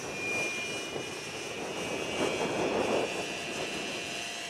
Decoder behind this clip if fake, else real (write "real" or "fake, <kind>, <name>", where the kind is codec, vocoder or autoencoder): real